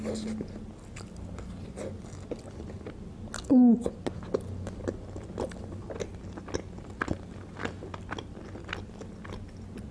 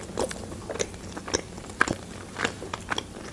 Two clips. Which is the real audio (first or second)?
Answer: first